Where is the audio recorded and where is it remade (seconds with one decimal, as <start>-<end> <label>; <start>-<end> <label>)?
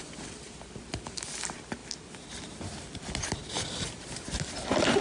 0.0-5.0 recorded